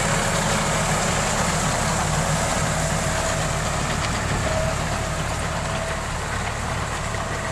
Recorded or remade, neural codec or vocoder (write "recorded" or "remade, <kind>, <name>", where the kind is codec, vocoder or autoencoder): recorded